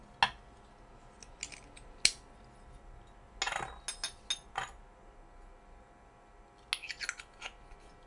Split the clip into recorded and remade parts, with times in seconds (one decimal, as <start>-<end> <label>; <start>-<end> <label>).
0.0-8.1 recorded